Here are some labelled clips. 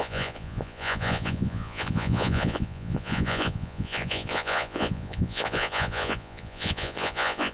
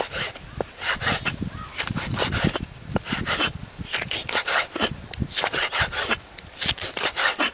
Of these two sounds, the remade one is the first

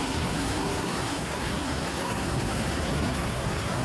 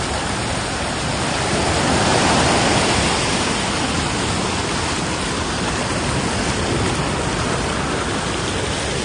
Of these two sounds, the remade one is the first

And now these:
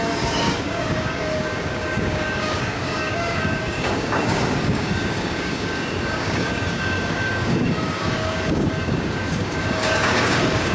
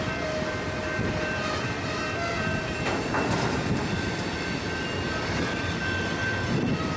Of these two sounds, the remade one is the first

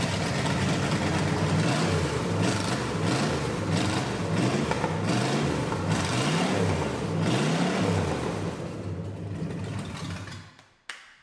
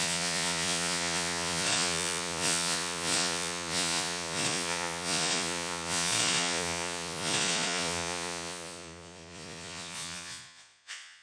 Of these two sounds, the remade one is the second